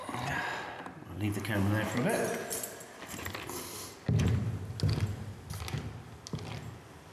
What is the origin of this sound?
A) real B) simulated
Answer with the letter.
A